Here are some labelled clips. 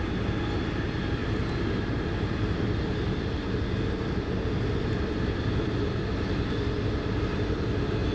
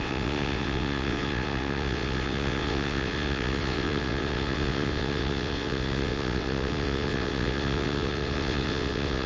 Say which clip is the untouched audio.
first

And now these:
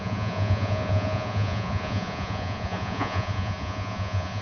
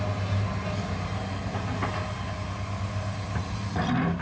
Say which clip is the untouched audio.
second